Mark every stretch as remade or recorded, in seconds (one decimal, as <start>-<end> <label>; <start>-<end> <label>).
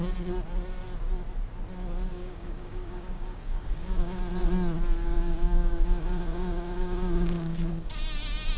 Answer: 0.0-2.1 recorded; 2.1-4.2 remade; 4.2-5.0 recorded; 5.0-7.9 remade; 7.9-8.6 recorded